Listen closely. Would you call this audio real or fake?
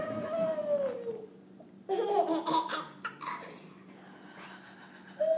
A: real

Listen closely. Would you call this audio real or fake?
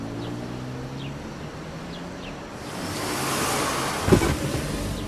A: real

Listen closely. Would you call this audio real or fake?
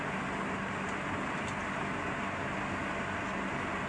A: real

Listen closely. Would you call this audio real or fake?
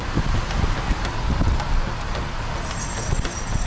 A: real